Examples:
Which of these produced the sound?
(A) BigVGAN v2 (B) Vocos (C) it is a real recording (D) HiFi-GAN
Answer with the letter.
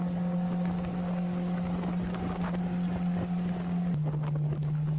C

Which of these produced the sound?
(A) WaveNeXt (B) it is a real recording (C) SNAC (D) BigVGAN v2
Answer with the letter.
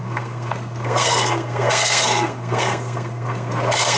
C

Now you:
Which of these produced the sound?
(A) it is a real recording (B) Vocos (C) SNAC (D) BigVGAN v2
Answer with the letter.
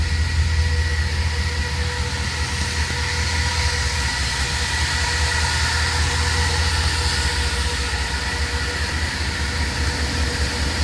A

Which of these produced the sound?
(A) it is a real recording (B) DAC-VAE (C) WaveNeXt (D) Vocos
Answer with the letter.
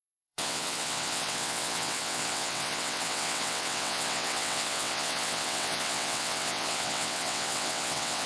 C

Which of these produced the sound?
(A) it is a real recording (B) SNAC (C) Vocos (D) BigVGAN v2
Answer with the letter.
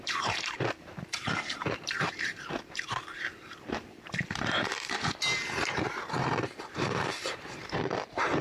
D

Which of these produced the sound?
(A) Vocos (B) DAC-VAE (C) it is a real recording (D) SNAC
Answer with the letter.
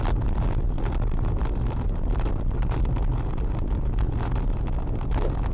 C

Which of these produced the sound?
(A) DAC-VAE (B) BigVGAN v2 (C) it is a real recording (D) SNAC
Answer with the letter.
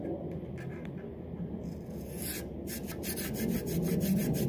C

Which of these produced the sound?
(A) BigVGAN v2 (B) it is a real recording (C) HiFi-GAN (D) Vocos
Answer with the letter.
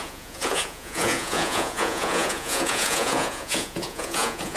D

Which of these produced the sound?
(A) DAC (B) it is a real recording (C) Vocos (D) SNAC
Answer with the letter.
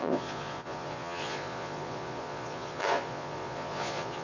C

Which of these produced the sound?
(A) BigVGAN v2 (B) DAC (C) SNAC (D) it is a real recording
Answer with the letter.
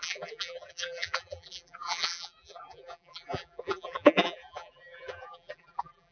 A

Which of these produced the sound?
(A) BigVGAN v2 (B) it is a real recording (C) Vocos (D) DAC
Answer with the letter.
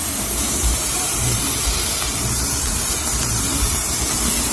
A